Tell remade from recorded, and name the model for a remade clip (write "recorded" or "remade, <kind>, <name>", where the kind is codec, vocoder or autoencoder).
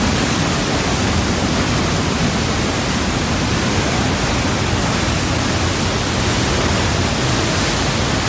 recorded